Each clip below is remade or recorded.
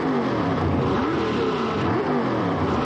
remade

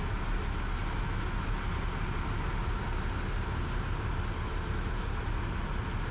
recorded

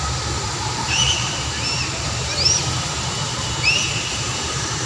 remade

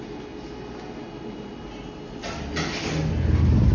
recorded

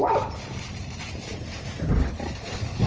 recorded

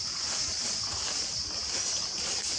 remade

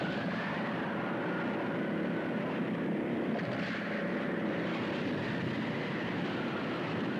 remade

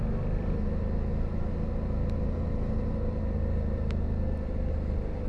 recorded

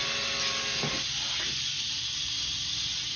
recorded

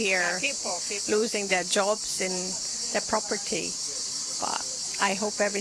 remade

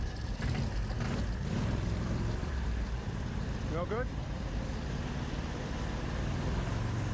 remade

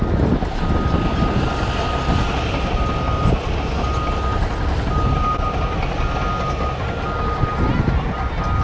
recorded